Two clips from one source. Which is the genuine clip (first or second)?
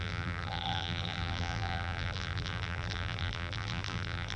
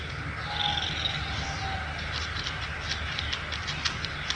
second